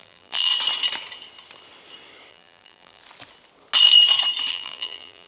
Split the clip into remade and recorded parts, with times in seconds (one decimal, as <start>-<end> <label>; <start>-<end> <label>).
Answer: 0.0-0.5 remade; 0.5-2.3 recorded; 2.3-3.0 remade; 3.0-4.5 recorded; 4.5-5.3 remade